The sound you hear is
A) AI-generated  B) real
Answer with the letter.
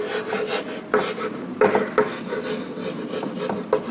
B